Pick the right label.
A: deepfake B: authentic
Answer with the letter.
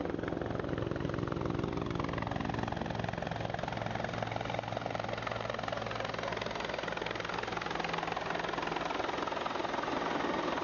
B